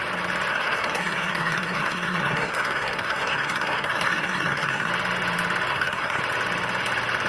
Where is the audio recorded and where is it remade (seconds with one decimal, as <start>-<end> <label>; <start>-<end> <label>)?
0.0-0.5 recorded; 0.5-4.9 remade; 4.9-5.7 recorded; 5.7-6.2 remade; 6.2-7.3 recorded